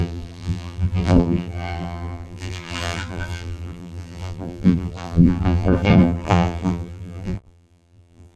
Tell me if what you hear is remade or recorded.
remade